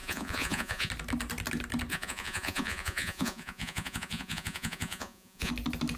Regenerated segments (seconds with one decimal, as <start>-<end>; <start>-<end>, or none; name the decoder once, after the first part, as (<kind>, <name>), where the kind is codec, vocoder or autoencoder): 0.0-0.9 (vocoder, Vocos); 1.9-5.5